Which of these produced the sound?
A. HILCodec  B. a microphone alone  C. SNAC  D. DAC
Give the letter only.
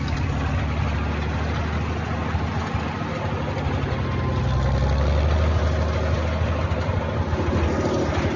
B